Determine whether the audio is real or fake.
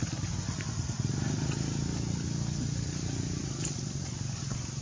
real